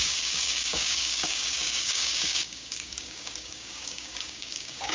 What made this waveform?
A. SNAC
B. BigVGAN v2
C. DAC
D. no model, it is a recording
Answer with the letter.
C